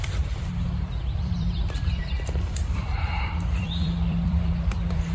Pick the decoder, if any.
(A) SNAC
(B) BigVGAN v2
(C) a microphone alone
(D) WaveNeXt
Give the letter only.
B